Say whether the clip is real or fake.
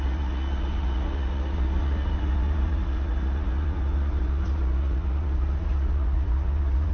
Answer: fake